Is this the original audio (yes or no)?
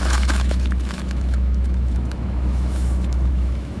no